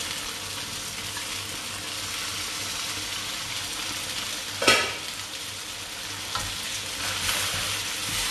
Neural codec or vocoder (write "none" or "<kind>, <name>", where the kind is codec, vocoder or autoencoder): none